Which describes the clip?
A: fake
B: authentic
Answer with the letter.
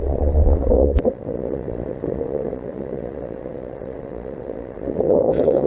A